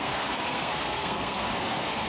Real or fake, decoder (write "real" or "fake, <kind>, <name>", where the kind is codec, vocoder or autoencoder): fake, codec, SNAC